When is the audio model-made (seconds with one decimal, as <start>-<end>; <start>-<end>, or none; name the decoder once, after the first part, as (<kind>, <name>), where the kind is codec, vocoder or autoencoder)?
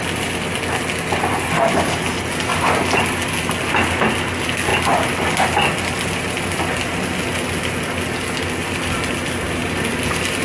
4.7-5.3 (vocoder, BigVGAN v2); 9.6-10.4